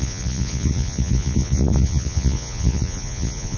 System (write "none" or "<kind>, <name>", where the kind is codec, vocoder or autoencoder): vocoder, Vocos